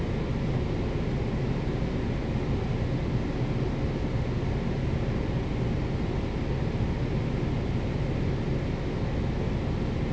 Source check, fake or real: real